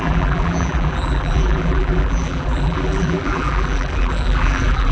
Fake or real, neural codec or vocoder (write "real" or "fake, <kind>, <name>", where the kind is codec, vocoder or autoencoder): fake, vocoder, BigVGAN v2